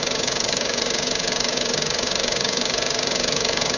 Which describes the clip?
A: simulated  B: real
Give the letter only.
A